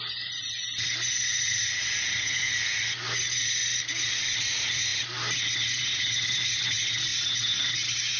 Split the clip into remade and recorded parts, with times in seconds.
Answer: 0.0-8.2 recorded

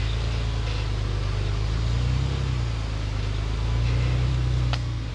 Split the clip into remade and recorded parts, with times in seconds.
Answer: 0.0-4.3 recorded; 4.3-5.1 remade

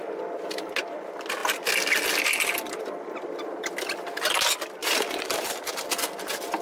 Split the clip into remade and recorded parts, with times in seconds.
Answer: 0.0-4.8 recorded; 4.8-5.6 remade; 5.6-6.6 recorded

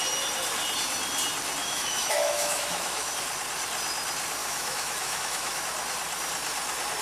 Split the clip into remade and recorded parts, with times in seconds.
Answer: 0.0-1.6 recorded; 1.6-3.1 remade; 3.1-4.4 recorded; 4.4-5.6 remade; 5.6-7.0 recorded

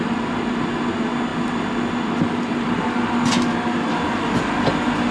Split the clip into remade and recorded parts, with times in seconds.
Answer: 0.0-5.1 recorded